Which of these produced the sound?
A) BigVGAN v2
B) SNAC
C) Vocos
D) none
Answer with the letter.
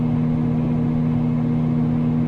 D